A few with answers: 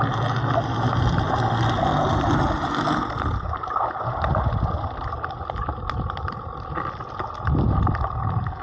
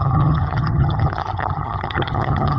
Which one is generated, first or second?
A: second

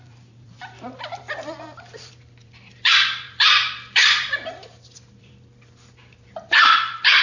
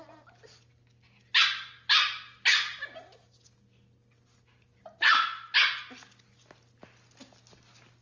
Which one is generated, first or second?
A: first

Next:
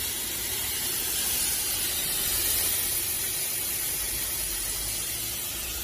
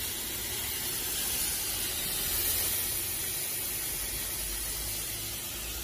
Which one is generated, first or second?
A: first